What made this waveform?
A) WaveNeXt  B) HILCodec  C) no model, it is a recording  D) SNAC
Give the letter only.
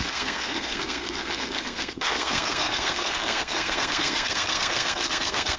D